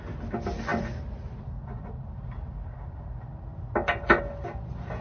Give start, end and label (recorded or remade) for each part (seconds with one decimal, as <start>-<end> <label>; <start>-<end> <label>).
0.0-5.0 recorded

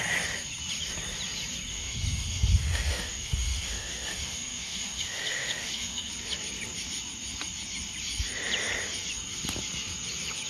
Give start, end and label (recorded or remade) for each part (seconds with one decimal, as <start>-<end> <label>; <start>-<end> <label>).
0.0-1.7 recorded; 1.7-6.1 remade; 6.1-10.5 recorded

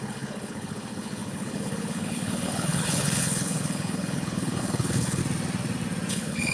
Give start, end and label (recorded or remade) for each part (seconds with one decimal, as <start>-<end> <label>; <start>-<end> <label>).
0.0-5.2 remade; 5.2-6.1 recorded; 6.1-6.5 remade

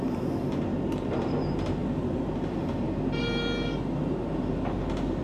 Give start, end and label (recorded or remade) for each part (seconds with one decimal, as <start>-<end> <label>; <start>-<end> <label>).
0.0-5.2 recorded